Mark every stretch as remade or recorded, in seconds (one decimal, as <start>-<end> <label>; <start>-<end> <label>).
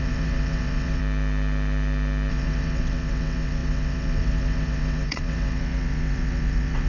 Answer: 0.0-1.0 remade; 1.0-2.3 recorded; 2.3-6.9 remade